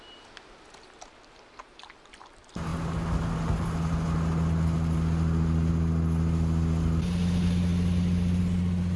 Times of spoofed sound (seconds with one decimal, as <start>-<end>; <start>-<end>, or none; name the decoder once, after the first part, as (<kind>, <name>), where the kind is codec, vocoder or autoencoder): none